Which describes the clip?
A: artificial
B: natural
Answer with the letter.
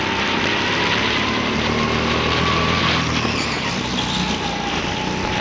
B